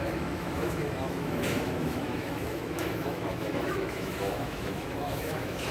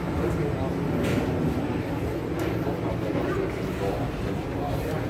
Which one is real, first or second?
second